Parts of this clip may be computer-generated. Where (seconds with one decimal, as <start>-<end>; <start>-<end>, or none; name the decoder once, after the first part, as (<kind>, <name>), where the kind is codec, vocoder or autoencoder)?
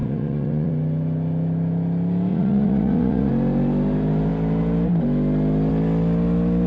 0.0-0.7 (vocoder, Vocos); 2.3-3.3